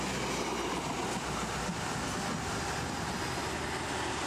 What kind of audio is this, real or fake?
real